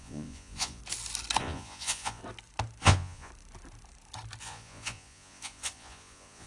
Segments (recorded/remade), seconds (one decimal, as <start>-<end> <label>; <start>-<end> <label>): 0.0-0.8 remade; 0.8-1.4 recorded; 1.4-2.2 remade; 2.2-2.8 recorded; 2.8-3.3 remade; 3.3-4.4 recorded; 4.4-6.5 remade